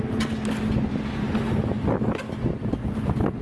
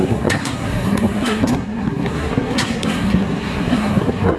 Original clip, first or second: first